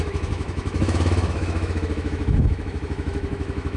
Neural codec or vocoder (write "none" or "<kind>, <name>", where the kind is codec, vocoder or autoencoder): autoencoder, DAC-VAE